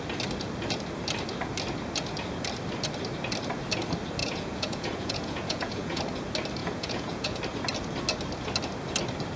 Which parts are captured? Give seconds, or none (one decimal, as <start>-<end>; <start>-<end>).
0.0-4.2; 6.0-6.6; 7.4-9.4